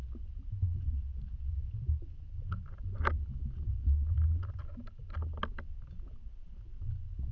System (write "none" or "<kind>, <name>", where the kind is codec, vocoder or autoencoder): none